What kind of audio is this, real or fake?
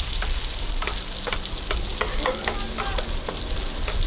real